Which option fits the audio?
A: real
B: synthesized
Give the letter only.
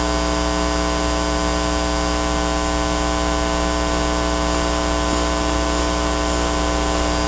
A